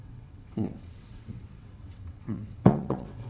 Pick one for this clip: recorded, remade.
remade